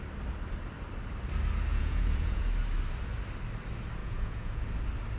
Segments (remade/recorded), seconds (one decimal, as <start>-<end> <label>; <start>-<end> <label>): 0.0-1.7 recorded; 1.7-2.4 remade; 2.4-4.0 recorded; 4.0-4.6 remade; 4.6-5.2 recorded